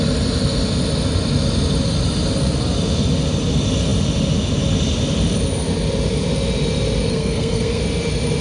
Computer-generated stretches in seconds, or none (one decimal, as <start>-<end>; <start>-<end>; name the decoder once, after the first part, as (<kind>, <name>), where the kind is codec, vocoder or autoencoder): 7.1-7.8 (codec, SNAC)